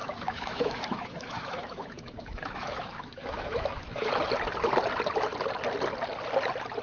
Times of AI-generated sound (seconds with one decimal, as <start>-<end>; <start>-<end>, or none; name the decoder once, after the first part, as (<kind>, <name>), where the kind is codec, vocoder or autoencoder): 0.0-4.1 (autoencoder, DAC-VAE)